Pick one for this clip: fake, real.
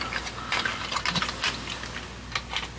real